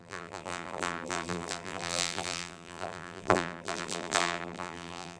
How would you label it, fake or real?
fake